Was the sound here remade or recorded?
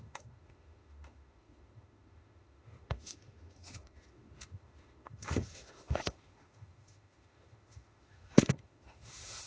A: remade